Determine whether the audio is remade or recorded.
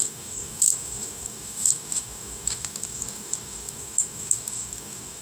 remade